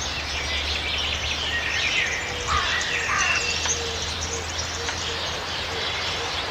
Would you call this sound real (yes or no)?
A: yes